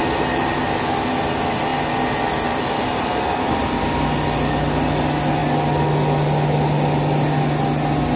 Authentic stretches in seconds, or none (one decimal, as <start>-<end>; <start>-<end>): 0.0-8.2